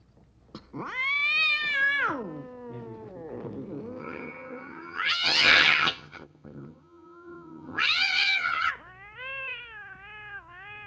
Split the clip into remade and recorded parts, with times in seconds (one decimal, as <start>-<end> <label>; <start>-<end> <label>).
0.0-4.0 recorded; 4.0-8.7 remade; 8.7-10.9 recorded